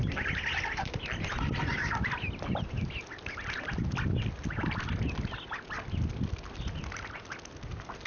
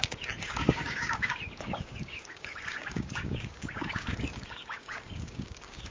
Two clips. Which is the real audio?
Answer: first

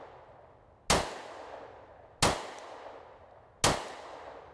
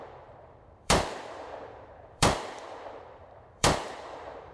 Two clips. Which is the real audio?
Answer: first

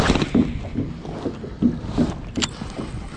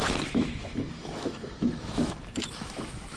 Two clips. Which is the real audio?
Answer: first